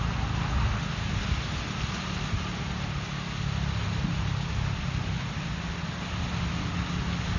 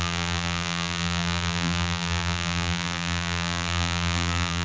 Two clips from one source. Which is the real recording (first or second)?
first